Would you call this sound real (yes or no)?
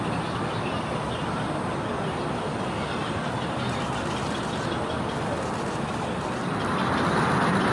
yes